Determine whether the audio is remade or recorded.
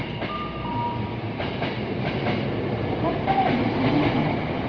recorded